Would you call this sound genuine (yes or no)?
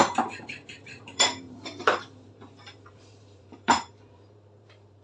no